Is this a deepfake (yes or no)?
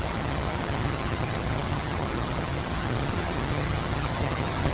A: yes